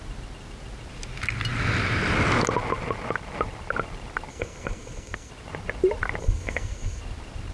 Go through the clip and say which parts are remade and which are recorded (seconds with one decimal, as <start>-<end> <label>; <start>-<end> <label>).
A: 0.0-4.3 recorded; 4.3-5.3 remade; 5.3-6.2 recorded; 6.2-7.0 remade; 7.0-7.5 recorded